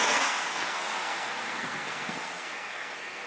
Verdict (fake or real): fake